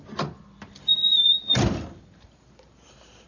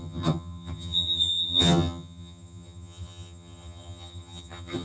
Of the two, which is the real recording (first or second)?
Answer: first